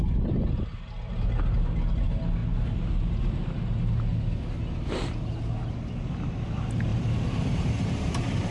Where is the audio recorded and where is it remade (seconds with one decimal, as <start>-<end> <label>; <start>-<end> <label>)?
0.0-6.9 recorded; 6.9-8.5 remade